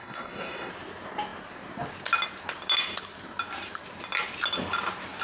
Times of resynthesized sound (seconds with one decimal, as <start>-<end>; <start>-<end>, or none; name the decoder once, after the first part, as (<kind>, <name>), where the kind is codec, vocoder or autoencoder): 0.0-0.7 (codec, SNAC)